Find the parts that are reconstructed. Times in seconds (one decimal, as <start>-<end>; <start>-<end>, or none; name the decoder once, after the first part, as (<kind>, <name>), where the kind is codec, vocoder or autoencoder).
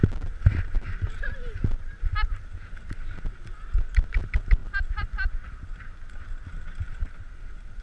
none